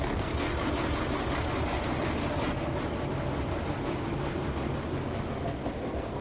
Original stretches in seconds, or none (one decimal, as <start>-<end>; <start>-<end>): 0.5-1.8; 2.2-5.3